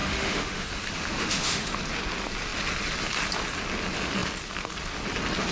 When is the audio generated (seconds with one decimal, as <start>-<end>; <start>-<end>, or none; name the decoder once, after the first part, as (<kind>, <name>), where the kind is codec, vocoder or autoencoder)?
0.0-1.8 (autoencoder, DAC-VAE)